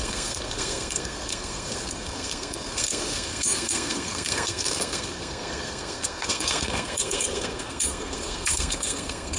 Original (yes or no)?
no